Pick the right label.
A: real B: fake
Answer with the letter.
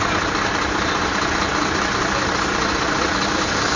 A